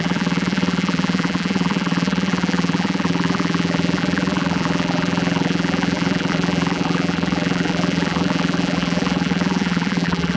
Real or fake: fake